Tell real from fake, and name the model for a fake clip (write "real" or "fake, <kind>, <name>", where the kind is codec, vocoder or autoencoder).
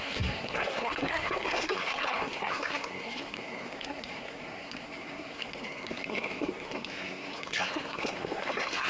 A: fake, codec, SNAC